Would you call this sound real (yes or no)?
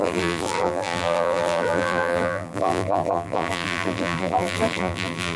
no